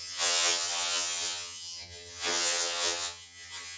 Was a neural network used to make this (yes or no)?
yes